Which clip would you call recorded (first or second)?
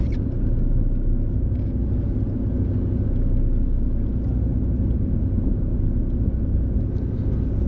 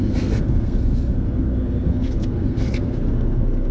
first